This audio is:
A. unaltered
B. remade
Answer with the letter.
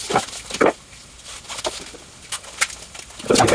A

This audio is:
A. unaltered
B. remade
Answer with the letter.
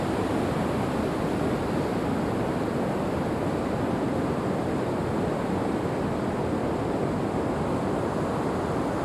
B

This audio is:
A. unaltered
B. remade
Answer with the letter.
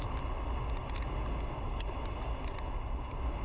A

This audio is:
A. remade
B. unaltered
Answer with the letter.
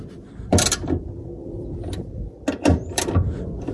A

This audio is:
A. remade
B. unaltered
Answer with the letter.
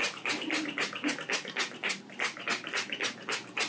A